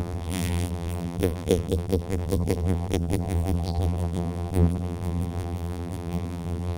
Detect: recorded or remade remade